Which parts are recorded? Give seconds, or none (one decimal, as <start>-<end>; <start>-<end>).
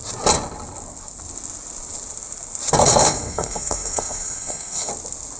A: 0.0-3.0; 4.9-5.4